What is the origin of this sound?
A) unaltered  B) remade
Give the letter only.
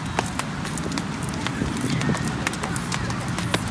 A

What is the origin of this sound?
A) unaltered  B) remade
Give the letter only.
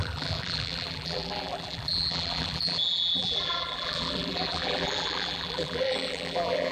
B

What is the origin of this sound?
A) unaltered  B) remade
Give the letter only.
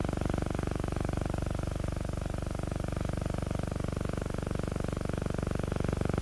A